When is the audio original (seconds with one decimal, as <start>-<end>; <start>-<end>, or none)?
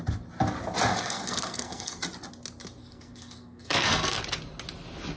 0.0-0.9; 2.0-2.8; 4.2-5.2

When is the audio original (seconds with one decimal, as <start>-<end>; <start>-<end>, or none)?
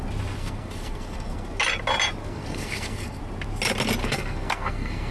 0.0-0.4; 1.6-2.2; 3.2-4.0